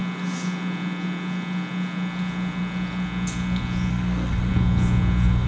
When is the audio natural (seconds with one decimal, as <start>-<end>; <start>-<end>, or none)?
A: 0.0-3.9; 4.5-5.5